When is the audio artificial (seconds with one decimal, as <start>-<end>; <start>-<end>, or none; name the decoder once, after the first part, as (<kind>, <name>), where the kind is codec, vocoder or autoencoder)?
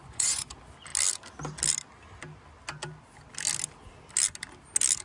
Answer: 0.0-0.5 (vocoder, Vocos)